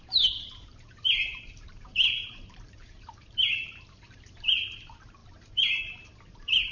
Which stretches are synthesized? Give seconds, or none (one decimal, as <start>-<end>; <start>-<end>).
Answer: 0.0-6.7